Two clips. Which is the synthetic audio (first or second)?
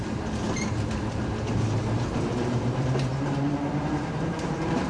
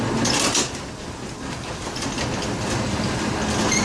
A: first